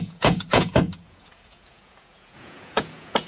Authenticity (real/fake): fake